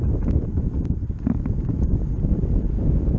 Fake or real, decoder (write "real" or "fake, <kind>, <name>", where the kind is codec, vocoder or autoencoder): fake, vocoder, BigVGAN v2